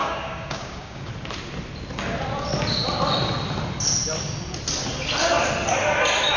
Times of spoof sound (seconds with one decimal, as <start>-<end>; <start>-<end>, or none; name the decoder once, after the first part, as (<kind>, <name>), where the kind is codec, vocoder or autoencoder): 0.0-1.1 (codec, DAC)